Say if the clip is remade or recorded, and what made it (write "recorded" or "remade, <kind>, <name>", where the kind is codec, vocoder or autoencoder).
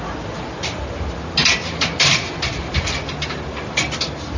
recorded